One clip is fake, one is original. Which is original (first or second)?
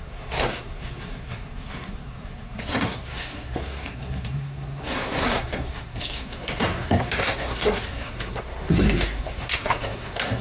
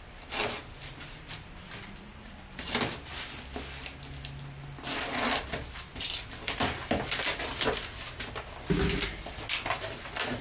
second